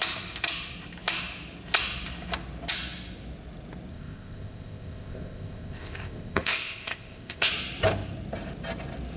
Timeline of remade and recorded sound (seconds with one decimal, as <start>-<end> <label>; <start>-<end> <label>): 0.0-3.9 recorded; 3.9-7.5 remade; 7.5-9.2 recorded